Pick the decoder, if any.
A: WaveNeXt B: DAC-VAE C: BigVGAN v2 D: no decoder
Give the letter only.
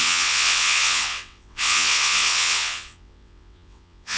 A